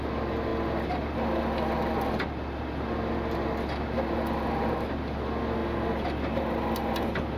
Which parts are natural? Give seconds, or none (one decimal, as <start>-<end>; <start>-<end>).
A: 0.0-7.4